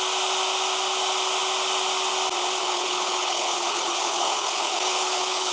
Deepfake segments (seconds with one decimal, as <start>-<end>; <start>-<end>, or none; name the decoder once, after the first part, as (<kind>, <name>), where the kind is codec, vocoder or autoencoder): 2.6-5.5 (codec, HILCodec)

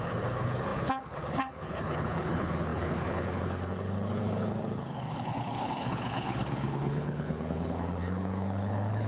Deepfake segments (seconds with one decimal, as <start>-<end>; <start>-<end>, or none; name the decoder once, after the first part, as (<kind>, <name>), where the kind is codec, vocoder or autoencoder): 0.0-9.1 (codec, HILCodec)

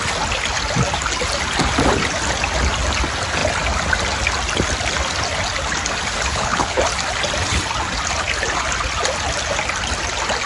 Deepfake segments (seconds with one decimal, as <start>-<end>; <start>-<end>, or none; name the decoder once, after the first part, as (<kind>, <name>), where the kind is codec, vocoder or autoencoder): 6.3-6.8 (codec, HILCodec)